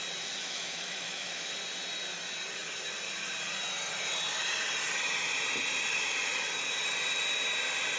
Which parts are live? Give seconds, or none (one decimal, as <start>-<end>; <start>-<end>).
0.0-0.4; 1.5-8.0